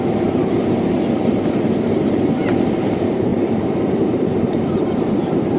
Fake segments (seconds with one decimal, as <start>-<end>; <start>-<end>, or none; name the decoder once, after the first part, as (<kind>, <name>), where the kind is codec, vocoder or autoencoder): 0.0-0.4 (vocoder, BigVGAN v2); 1.8-5.6